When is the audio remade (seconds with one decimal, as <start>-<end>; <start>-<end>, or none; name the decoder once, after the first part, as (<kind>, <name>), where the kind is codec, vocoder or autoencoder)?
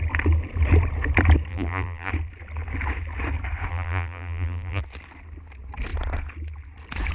1.5-2.1 (vocoder, BigVGAN v2); 3.7-4.8